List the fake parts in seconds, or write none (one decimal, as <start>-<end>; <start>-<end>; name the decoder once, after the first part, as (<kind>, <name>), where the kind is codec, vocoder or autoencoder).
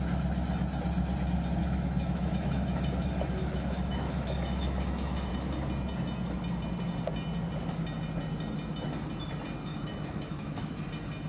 1.6-5.3 (autoencoder, DAC-VAE); 9.7-10.9